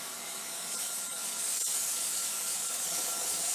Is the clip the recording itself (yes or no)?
no